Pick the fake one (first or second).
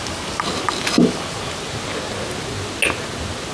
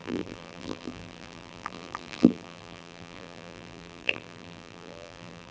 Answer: second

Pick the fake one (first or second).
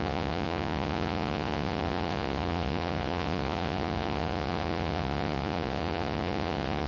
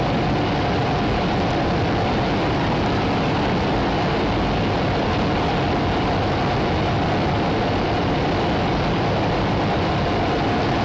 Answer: first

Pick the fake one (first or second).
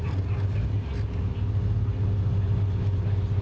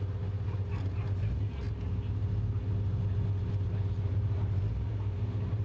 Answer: first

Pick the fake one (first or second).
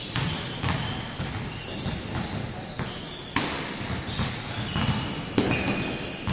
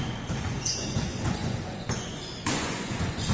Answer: second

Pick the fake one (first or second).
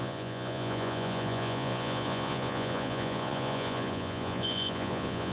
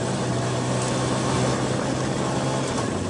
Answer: first